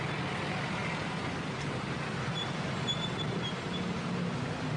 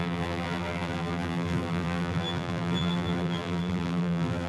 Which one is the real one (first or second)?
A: first